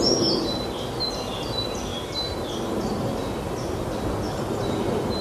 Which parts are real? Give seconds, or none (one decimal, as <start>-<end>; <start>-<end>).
0.0-5.2